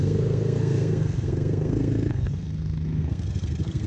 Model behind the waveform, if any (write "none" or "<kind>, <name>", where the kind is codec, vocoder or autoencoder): codec, SNAC